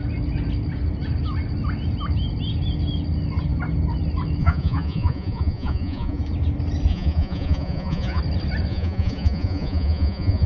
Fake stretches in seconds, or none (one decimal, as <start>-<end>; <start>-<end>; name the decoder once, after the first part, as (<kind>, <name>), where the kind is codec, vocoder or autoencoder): 4.4-6.2 (vocoder, Vocos); 6.9-8.2; 8.7-10.5